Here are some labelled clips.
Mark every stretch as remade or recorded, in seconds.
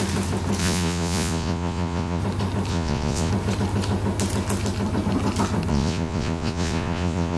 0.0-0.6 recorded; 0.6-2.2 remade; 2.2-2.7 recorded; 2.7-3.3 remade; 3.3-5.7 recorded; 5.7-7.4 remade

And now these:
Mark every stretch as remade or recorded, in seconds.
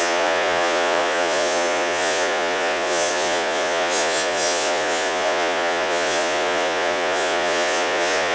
0.0-8.3 remade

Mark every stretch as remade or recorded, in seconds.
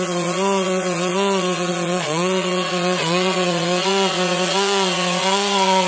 0.0-5.9 remade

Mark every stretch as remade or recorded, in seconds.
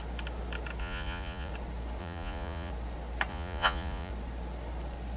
0.0-0.8 recorded; 0.8-1.5 remade; 1.5-2.0 recorded; 2.0-2.7 remade; 2.7-3.3 recorded; 3.3-4.1 remade; 4.1-5.2 recorded